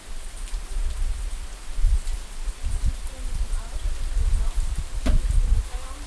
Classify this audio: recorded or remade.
recorded